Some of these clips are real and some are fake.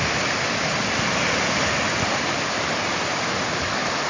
real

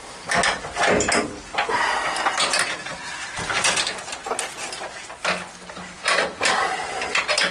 real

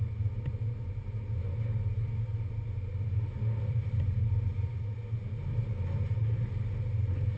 real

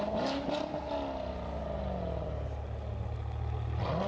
real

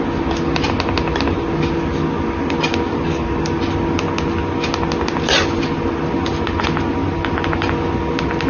real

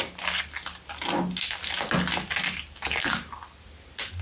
real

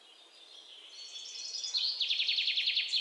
real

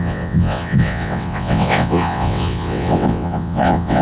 fake